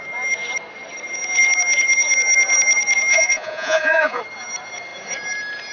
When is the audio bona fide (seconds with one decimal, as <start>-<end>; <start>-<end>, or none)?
0.0-3.1; 4.2-5.7